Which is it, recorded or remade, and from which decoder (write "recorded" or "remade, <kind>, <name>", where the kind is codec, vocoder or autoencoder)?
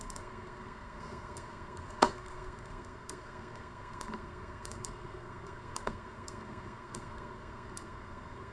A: remade, codec, SNAC